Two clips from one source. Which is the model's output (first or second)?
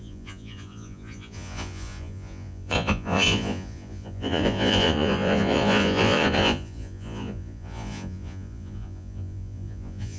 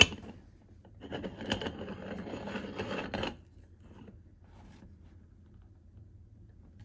first